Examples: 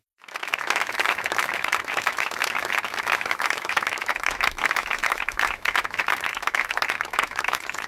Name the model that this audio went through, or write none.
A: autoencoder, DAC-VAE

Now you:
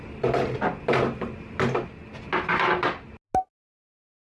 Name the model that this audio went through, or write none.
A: none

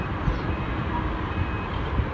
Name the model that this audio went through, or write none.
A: none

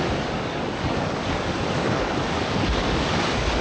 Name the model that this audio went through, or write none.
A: codec, DAC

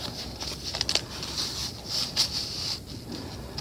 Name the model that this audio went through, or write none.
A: none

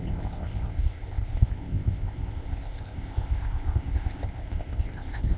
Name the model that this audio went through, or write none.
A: codec, ZipCodec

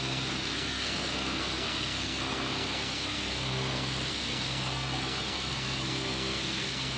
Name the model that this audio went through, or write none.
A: codec, SNAC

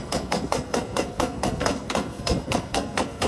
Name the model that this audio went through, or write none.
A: codec, SNAC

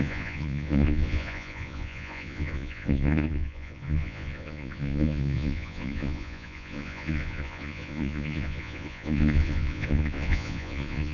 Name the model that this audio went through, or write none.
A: vocoder, Vocos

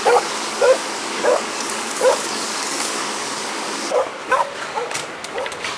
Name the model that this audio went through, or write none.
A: codec, DAC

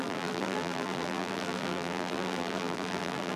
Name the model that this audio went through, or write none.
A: vocoder, BigVGAN v2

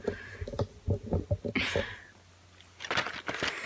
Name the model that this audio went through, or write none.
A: none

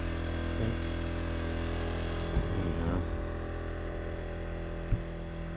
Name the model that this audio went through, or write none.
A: none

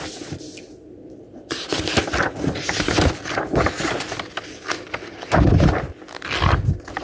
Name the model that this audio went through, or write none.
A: none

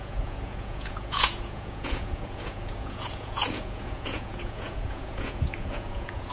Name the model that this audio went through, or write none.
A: vocoder, Vocos